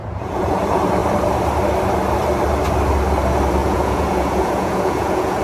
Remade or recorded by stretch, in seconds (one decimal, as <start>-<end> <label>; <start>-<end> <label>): 0.0-0.5 remade; 0.5-3.6 recorded; 3.6-5.4 remade